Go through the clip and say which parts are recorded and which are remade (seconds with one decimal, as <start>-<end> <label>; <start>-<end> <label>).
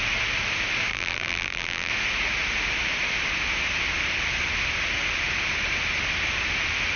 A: 0.0-0.9 recorded; 0.9-1.9 remade; 1.9-7.0 recorded